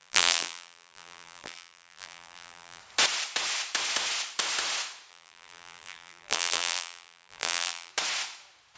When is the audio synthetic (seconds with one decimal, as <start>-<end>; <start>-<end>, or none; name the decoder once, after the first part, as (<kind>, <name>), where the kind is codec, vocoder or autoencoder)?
0.0-2.8 (vocoder, BigVGAN v2); 5.1-7.9